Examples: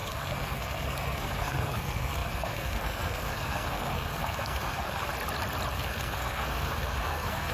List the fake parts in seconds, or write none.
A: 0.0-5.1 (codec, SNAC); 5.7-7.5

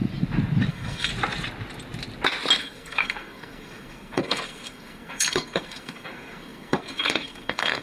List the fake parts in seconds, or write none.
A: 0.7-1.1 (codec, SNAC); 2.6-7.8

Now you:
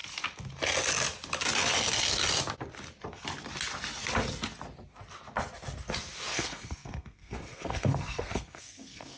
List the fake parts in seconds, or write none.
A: 6.3-9.2 (codec, SNAC)

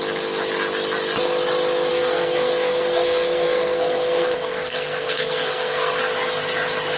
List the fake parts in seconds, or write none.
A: 1.9-6.0 (codec, SNAC)

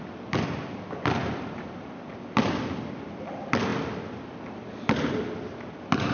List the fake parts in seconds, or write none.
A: none

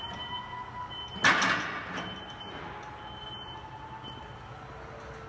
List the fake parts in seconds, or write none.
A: none